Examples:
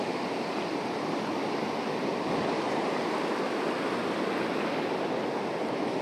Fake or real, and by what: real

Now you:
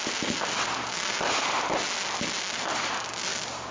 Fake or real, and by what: real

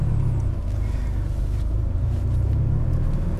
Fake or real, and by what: real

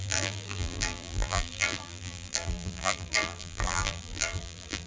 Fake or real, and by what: fake, vocoder, BigVGAN v2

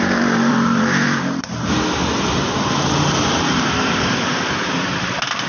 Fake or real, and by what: fake, vocoder, BigVGAN v2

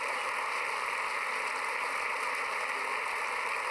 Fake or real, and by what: real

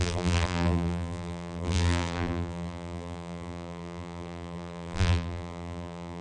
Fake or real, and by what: fake, vocoder, BigVGAN v2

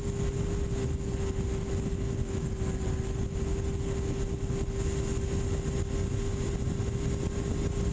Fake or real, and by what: real